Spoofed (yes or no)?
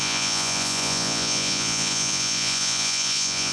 yes